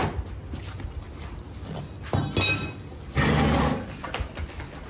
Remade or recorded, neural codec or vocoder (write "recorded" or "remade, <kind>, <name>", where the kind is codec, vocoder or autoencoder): recorded